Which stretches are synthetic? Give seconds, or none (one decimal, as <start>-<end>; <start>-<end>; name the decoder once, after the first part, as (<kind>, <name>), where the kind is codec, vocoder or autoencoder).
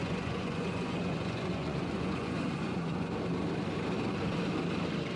0.0-3.1 (vocoder, Vocos)